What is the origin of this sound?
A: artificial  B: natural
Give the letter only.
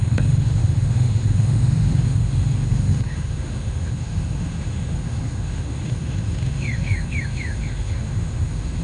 A